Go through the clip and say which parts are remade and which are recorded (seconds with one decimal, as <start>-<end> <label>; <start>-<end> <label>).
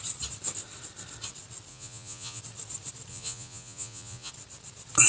0.0-1.7 recorded; 1.7-2.4 remade; 2.4-3.1 recorded; 3.1-4.3 remade; 4.3-5.1 recorded